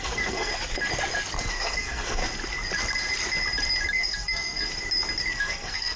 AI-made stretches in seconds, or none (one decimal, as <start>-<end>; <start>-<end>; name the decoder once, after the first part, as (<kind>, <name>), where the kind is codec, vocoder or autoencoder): 0.0-0.5 (codec, SNAC); 1.5-2.2; 3.9-4.7; 5.3-6.0